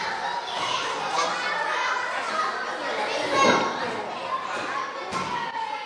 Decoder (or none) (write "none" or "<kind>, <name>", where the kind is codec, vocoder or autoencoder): none